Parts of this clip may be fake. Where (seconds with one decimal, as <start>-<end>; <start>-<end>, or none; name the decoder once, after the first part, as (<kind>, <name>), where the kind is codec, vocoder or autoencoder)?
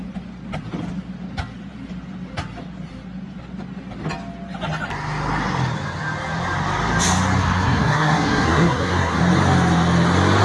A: 7.4-9.2 (codec, SNAC)